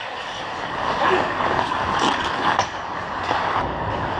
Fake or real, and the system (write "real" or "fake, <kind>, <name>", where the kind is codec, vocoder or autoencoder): fake, codec, DAC